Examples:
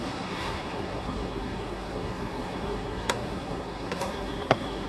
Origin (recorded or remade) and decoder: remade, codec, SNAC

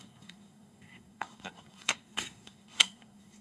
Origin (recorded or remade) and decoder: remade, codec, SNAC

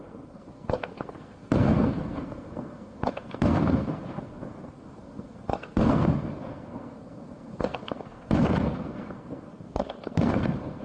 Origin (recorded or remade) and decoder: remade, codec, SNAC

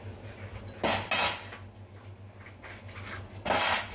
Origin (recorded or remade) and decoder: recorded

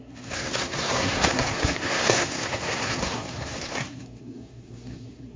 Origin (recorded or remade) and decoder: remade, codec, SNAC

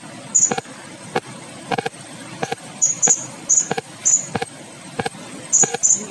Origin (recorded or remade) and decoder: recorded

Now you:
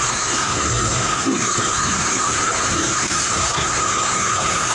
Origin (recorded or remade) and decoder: remade, codec, SNAC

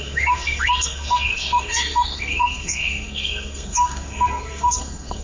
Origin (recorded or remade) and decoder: remade, codec, SNAC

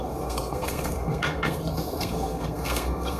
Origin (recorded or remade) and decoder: remade, codec, SNAC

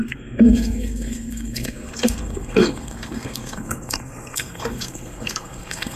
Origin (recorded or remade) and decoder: remade, codec, SNAC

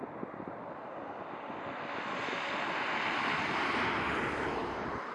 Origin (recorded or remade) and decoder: recorded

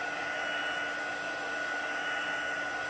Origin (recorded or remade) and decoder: recorded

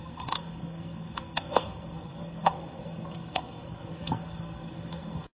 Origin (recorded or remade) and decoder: remade, codec, SNAC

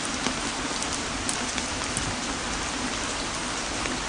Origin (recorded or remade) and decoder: recorded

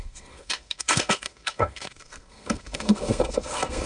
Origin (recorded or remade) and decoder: remade, codec, SNAC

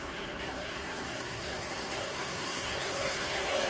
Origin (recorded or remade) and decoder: remade, codec, SNAC